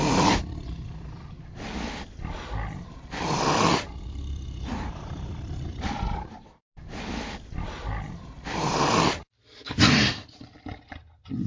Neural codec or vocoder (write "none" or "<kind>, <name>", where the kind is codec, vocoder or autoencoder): vocoder, BigVGAN v2